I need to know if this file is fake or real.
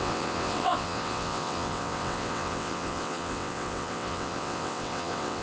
fake